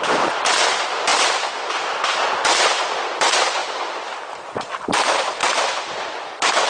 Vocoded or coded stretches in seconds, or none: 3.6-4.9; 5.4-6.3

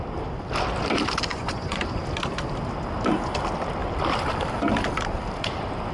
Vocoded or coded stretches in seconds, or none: 1.3-2.0

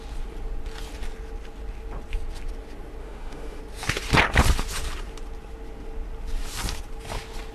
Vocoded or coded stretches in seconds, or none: 3.0-3.6